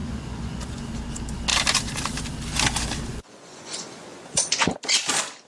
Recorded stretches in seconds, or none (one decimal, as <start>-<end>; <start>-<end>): 0.9-3.1; 4.7-5.5

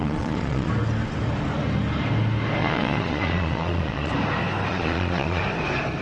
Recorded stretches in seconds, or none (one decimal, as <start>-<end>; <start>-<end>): 0.7-2.6; 4.1-4.7; 5.4-6.0

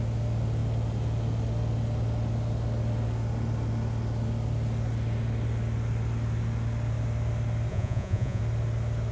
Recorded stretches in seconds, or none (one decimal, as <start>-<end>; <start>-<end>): 0.0-7.7; 8.4-9.1

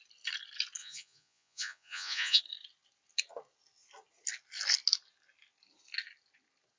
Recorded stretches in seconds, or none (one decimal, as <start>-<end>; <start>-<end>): 0.0-0.8; 2.4-6.8

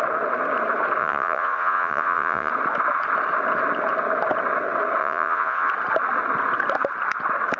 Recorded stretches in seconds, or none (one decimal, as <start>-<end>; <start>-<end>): 0.0-1.0; 2.5-5.0; 5.7-7.6

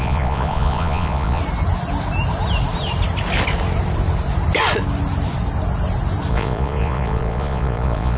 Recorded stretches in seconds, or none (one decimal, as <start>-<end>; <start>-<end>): 1.4-6.3